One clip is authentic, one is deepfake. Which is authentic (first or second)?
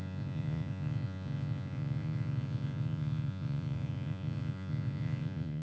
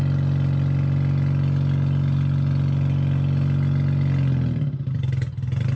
second